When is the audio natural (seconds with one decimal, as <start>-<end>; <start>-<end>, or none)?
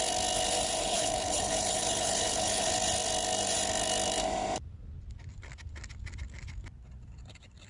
0.0-0.8; 2.7-7.7